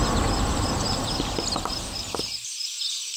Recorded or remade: recorded